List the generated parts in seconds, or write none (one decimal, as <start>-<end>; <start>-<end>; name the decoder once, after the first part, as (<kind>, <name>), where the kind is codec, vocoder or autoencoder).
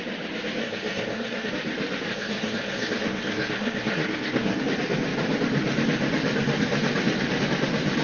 0.6-1.5 (codec, SNAC); 2.1-4.6